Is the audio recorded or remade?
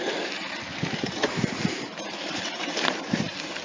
remade